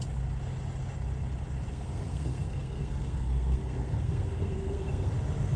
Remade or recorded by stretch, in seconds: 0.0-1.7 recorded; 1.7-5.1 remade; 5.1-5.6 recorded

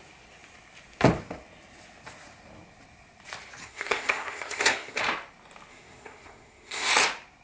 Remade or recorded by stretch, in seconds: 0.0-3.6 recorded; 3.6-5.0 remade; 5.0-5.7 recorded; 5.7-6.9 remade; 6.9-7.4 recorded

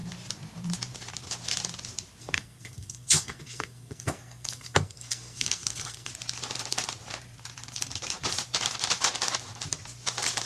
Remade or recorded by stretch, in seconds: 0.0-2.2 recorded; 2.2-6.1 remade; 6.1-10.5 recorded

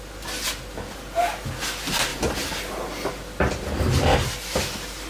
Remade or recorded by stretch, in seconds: 0.0-5.1 recorded